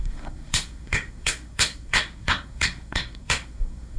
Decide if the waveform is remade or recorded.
remade